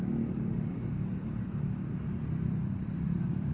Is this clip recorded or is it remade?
remade